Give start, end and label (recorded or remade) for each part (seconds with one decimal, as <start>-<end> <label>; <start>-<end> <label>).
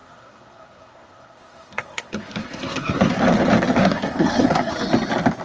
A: 0.0-3.2 remade; 3.2-3.8 recorded; 3.8-4.7 remade; 4.7-5.4 recorded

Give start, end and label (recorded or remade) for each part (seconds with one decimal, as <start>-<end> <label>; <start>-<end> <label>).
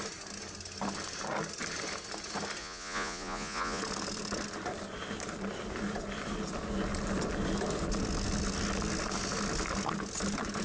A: 0.0-2.6 recorded; 2.6-3.8 remade; 3.8-10.6 recorded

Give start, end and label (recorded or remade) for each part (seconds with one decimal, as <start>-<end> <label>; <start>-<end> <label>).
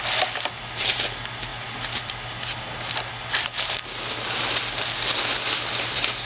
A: 0.0-6.2 recorded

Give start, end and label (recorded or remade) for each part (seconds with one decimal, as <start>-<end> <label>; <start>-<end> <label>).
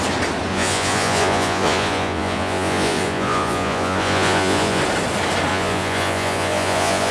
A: 0.0-0.5 recorded; 0.5-4.8 remade; 4.8-5.5 recorded; 5.5-7.1 remade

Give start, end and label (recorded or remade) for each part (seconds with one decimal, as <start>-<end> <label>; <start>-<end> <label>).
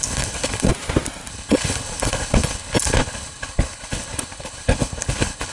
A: 0.0-0.7 remade; 0.7-1.3 recorded; 1.3-5.5 remade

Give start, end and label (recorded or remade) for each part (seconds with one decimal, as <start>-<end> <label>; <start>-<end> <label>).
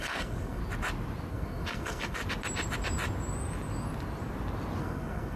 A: 0.0-0.6 remade; 0.6-1.3 recorded; 1.3-2.2 remade; 2.2-4.8 recorded; 4.8-5.4 remade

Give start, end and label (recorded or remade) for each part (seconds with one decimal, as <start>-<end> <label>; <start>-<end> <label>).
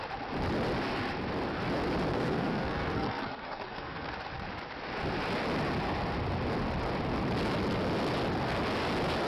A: 0.0-2.1 recorded; 2.1-4.1 remade; 4.1-9.3 recorded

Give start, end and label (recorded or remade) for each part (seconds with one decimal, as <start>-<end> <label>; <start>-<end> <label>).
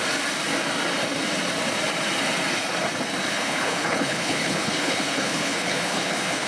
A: 0.0-3.3 recorded; 3.3-6.5 remade